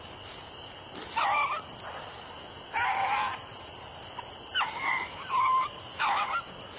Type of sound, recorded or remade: recorded